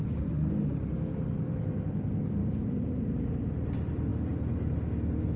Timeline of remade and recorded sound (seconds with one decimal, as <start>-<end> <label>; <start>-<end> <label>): 0.0-2.4 recorded; 2.4-3.4 remade; 3.4-5.4 recorded